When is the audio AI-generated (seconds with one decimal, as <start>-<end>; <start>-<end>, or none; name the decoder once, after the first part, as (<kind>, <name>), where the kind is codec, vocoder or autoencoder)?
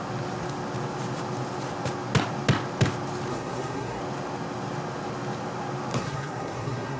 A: 3.3-4.0 (codec, SNAC); 5.9-7.0